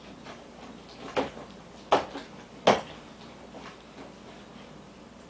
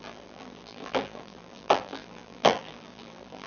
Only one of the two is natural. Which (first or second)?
first